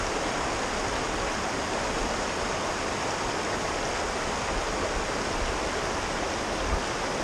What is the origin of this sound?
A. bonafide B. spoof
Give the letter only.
A